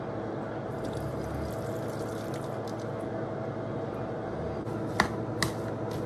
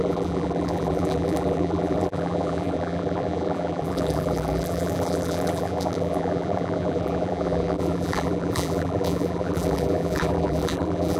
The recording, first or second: first